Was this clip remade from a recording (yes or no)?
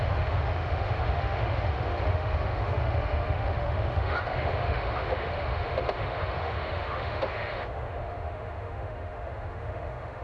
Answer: yes